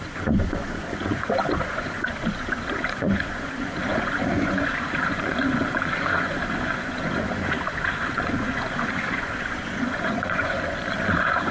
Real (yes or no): no